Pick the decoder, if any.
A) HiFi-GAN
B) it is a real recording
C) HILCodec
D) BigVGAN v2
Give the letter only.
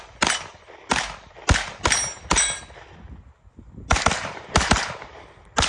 B